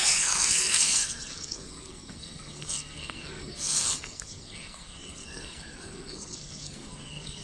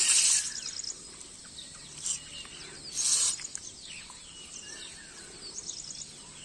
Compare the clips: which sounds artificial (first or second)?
first